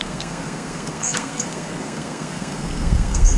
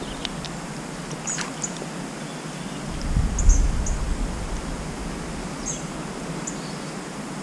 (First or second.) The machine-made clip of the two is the first